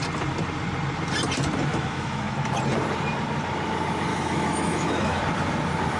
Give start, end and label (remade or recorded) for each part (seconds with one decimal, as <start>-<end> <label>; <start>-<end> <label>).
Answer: 0.0-1.7 recorded; 1.7-2.5 remade; 2.5-4.1 recorded; 4.1-5.2 remade; 5.2-6.0 recorded